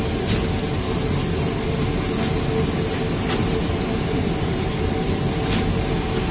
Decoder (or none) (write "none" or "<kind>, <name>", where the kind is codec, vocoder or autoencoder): none